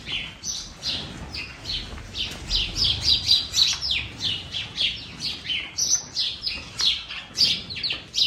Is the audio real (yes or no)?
yes